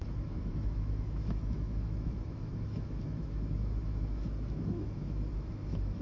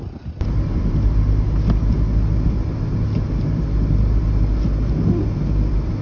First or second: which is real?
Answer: second